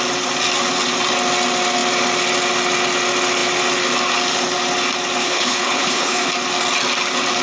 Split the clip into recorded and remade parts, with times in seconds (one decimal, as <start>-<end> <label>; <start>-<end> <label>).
0.0-5.2 recorded; 5.2-6.3 remade; 6.3-7.4 recorded